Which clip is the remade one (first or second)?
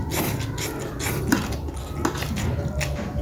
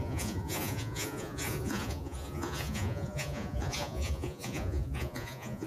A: second